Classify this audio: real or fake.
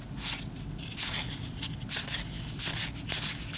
real